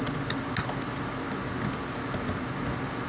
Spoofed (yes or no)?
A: no